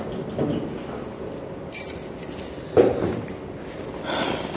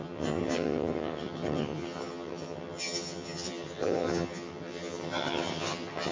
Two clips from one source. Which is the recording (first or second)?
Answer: first